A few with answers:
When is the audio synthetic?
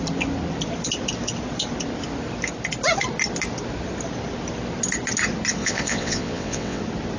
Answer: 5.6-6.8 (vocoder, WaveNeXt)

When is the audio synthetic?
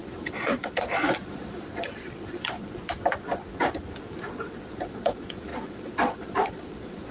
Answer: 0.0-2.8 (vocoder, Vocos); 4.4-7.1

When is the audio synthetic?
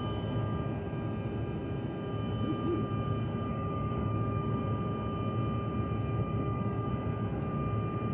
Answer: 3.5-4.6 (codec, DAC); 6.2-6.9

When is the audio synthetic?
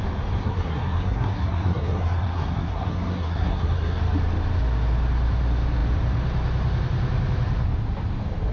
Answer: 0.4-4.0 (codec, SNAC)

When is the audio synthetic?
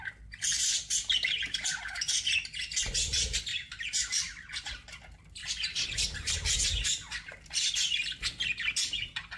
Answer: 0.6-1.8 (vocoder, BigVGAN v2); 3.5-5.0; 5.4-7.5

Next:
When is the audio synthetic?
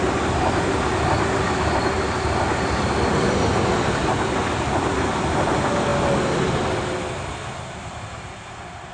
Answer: none